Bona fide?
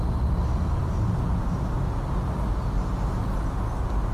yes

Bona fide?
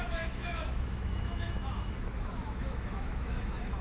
no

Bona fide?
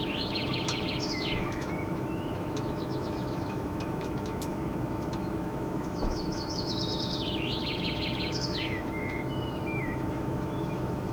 no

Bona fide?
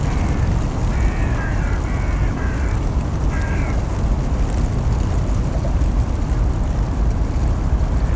yes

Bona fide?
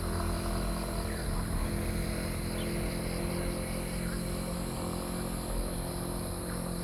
yes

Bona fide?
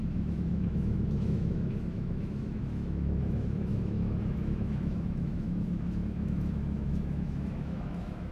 no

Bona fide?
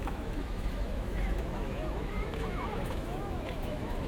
no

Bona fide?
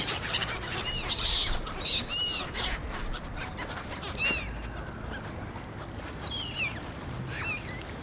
yes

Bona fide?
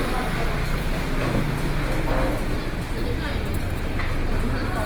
yes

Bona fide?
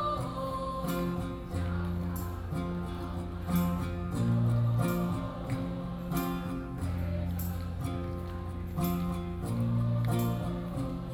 yes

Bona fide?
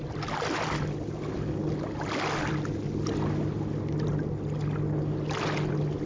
yes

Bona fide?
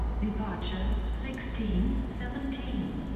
yes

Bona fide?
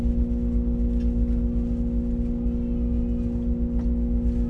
yes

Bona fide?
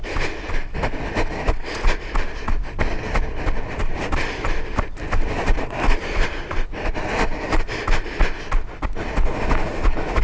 yes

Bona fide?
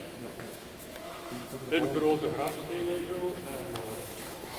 no